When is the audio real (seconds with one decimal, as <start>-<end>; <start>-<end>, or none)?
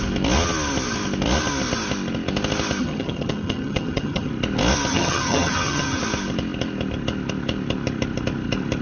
0.0-2.8; 4.3-4.9; 6.0-8.8